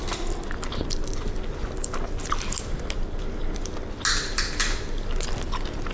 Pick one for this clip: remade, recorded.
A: recorded